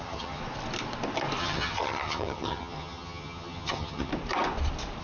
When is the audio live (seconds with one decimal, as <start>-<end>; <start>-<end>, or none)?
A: 0.4-1.4; 4.1-5.0